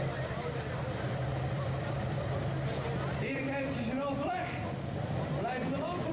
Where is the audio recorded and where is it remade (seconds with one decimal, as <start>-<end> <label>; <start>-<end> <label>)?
0.0-1.3 recorded; 1.3-2.0 remade; 2.0-6.1 recorded